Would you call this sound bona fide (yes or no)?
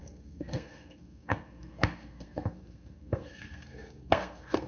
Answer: no